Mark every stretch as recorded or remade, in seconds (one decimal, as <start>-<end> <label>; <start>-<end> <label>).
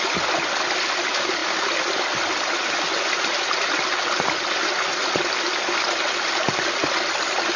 0.0-7.6 recorded